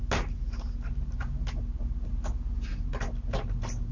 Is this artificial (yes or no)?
no